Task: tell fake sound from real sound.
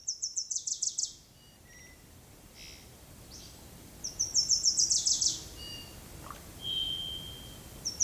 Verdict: fake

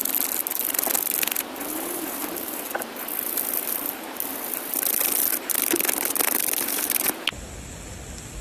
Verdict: real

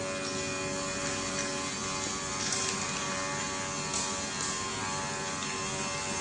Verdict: real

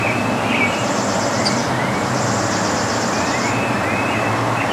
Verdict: real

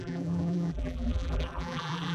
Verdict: fake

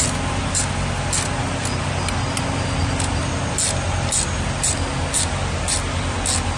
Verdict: real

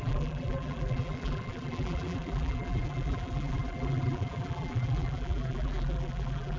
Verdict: fake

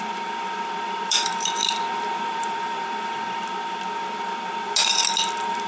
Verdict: fake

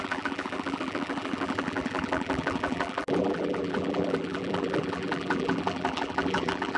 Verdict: fake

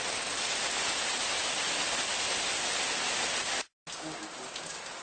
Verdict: real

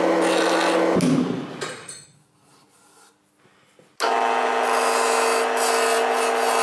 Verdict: real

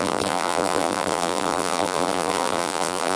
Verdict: fake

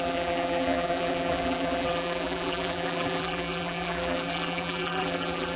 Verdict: fake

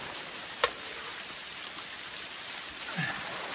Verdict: fake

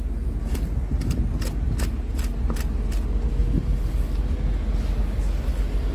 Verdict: real